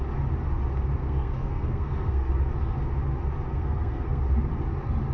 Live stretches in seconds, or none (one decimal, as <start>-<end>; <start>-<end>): 0.0-1.0; 2.3-3.5; 4.2-5.1